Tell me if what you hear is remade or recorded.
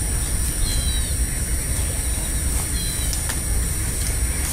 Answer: recorded